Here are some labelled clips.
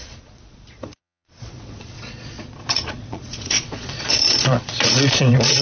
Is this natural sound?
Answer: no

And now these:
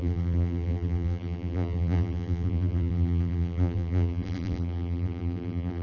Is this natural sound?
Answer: no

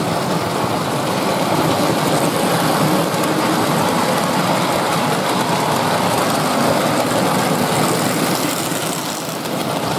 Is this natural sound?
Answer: yes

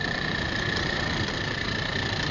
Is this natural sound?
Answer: no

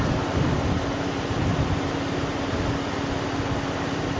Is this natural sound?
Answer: yes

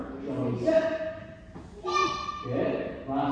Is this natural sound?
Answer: yes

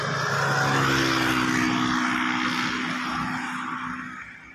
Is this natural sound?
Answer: yes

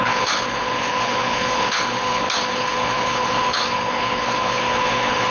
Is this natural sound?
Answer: no